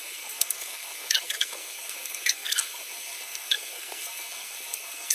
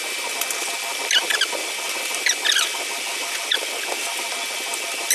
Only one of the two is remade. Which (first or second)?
first